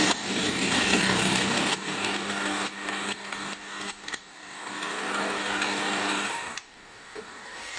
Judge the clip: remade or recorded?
remade